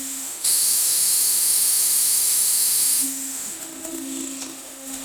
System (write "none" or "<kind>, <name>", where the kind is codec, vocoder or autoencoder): autoencoder, DAC-VAE